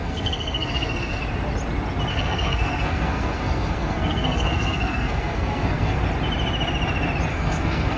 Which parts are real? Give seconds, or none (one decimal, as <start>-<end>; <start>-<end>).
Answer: 1.2-2.1; 6.0-7.3